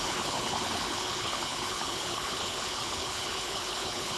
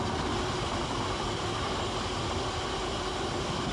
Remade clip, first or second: first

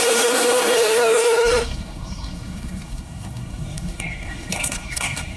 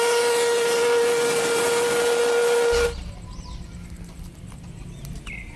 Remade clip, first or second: first